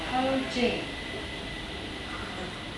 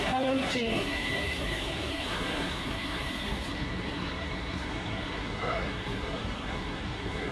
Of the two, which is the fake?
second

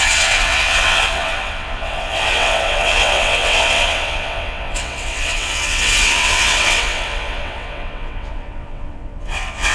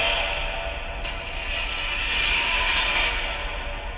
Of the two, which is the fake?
first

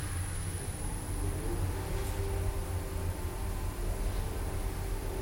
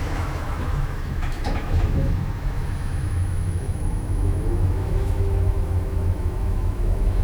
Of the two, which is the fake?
second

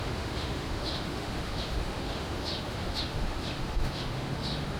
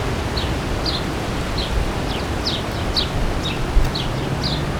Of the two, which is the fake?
first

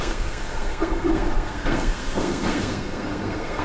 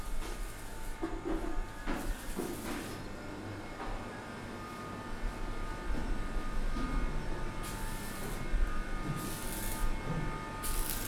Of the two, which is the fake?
first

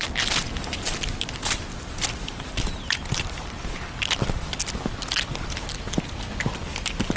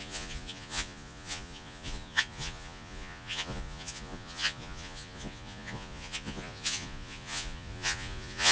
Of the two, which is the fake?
second